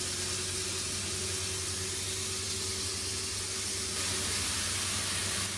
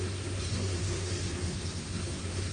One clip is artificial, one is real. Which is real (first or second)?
first